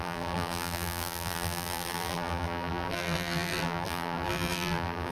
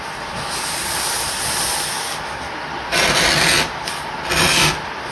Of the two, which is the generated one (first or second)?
first